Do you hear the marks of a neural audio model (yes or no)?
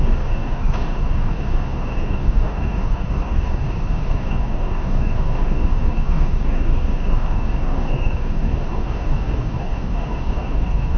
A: yes